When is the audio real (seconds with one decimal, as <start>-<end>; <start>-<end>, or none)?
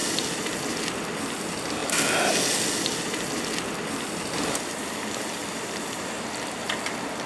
0.0-7.3